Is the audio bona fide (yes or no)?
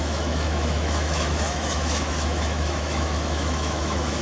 no